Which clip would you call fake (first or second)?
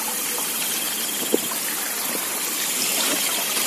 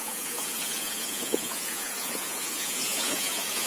second